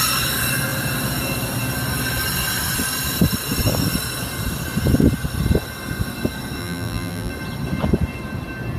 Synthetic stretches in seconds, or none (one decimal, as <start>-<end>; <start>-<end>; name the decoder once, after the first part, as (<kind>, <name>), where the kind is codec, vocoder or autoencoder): 6.6-7.3 (vocoder, BigVGAN v2)